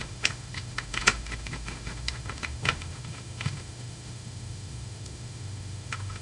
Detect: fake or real fake